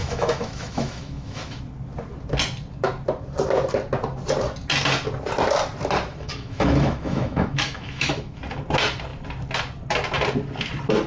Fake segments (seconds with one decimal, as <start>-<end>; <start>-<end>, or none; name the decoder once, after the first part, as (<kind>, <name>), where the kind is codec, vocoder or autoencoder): 0.0-1.6 (autoencoder, DAC-VAE); 6.1-8.4